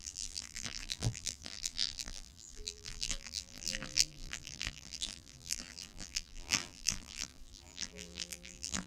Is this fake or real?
fake